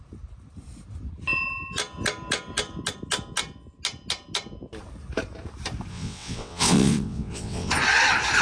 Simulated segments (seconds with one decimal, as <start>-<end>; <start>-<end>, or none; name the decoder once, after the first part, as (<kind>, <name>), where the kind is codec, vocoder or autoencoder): 5.9-7.7 (vocoder, WaveNeXt)